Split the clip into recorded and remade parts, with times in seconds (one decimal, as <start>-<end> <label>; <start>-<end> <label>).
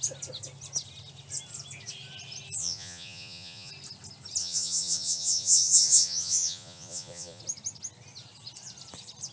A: 0.0-2.6 recorded; 2.6-3.7 remade; 3.7-4.4 recorded; 4.4-7.4 remade; 7.4-9.3 recorded